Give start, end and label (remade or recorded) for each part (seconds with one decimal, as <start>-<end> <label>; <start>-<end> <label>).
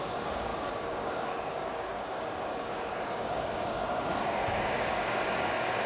0.0-5.9 remade